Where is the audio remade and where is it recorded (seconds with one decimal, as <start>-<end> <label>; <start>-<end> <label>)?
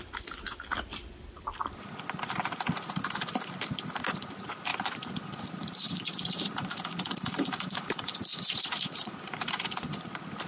0.0-4.7 recorded; 4.7-10.0 remade; 10.0-10.5 recorded